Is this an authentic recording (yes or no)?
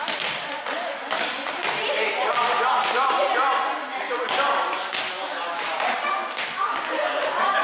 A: yes